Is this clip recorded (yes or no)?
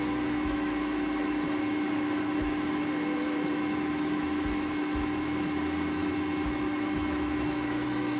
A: no